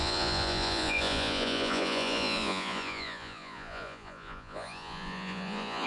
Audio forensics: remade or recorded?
remade